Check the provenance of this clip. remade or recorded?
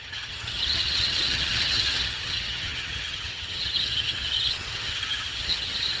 remade